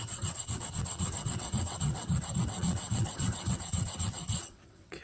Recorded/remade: remade